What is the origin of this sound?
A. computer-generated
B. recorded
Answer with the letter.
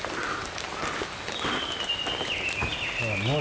B